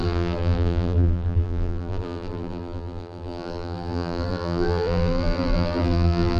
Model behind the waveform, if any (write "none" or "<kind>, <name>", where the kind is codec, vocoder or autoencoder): vocoder, BigVGAN v2